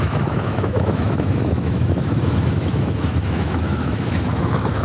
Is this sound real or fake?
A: fake